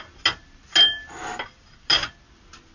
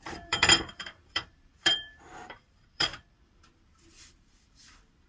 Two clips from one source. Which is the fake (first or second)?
second